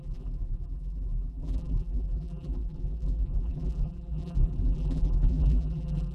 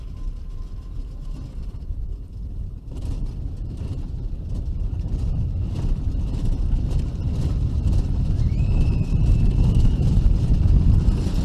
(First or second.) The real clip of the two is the second